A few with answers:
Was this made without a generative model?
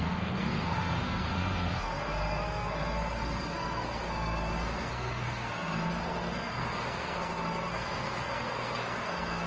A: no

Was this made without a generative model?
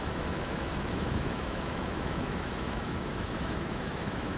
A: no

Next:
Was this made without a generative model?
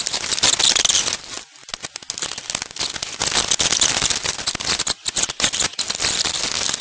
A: yes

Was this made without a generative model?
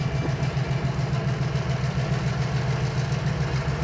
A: yes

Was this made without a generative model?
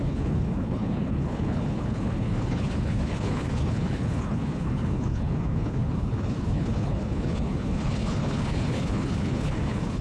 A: no